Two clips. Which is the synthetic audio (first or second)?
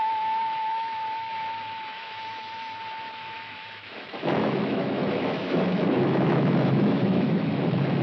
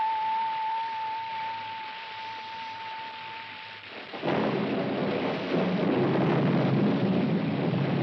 first